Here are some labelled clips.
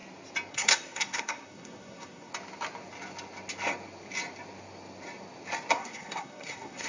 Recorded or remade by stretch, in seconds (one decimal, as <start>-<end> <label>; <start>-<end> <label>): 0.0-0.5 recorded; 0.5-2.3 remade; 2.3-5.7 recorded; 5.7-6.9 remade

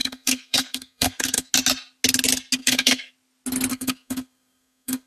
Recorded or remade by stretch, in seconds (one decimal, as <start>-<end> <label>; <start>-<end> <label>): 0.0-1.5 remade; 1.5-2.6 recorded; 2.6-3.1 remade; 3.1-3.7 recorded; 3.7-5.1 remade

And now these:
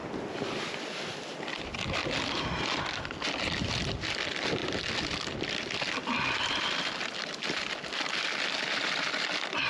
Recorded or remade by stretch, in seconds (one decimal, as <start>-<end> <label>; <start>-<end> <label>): 0.0-9.7 recorded

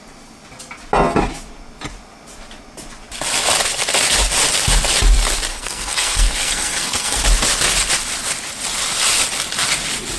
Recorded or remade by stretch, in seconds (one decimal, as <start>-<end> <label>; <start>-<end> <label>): 0.0-5.5 recorded; 5.5-7.2 remade; 7.2-10.2 recorded

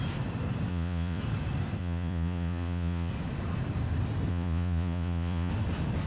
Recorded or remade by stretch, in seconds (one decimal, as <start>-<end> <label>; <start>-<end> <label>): 0.0-0.7 recorded; 0.7-1.2 remade; 1.2-1.8 recorded; 1.8-3.1 remade; 3.1-4.3 recorded; 4.3-5.5 remade; 5.5-6.1 recorded